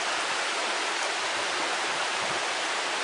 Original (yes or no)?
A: yes